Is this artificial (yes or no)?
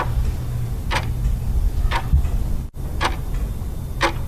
no